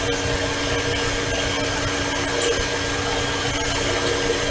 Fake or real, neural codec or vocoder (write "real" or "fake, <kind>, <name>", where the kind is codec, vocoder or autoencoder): real